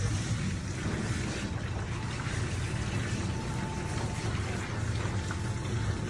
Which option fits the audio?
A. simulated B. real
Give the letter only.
B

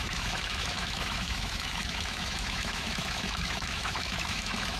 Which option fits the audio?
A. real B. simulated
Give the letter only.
B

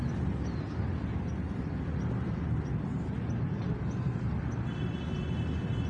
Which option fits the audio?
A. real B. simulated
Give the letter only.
A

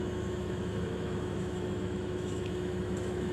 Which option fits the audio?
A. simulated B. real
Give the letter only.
A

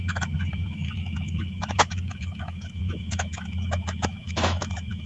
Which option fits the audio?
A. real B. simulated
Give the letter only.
B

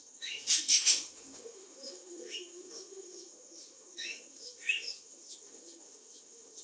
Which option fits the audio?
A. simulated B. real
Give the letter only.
A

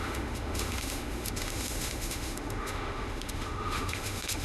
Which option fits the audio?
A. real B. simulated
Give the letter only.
B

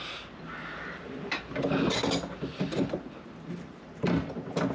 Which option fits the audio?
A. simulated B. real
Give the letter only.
B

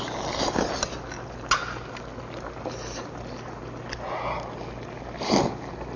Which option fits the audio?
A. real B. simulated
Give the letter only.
A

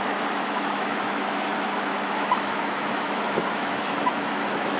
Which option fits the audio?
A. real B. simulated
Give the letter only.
B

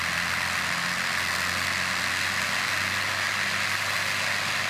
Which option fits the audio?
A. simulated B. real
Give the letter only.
B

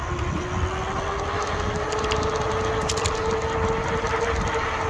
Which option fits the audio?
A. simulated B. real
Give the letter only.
B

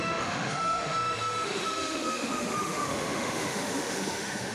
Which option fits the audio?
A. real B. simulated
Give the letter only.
B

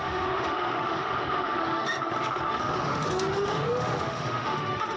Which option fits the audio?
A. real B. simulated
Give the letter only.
B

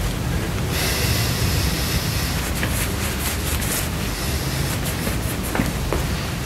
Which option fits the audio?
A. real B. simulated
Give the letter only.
A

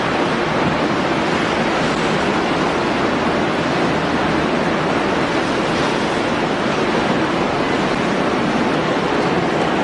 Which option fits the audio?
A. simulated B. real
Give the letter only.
B